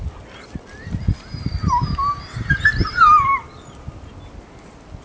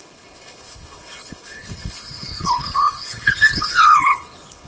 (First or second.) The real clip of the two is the first